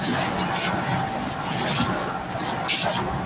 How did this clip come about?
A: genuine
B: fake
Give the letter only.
A